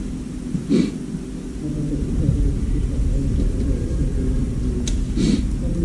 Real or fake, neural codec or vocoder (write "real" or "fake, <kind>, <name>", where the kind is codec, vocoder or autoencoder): real